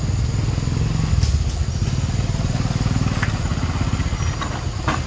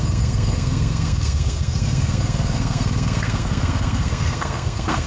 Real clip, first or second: first